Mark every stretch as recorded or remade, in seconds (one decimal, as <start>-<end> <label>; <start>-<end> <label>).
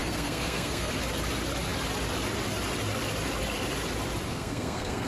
0.0-0.9 remade; 0.9-4.3 recorded; 4.3-5.1 remade